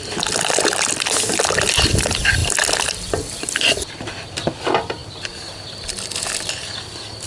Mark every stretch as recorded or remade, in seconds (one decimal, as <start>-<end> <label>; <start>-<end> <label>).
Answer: 0.0-7.3 recorded